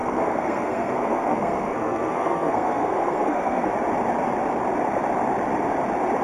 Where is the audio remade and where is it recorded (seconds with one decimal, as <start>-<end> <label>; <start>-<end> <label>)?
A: 0.0-3.7 remade; 3.7-6.2 recorded